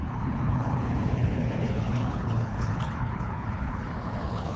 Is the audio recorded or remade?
remade